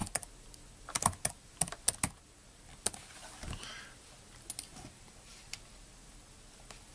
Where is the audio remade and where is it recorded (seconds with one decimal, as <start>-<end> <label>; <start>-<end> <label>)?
0.0-6.9 recorded